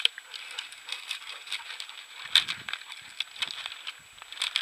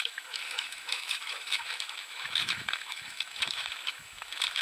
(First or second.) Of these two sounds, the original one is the first